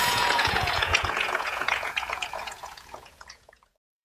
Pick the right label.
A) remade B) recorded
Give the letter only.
A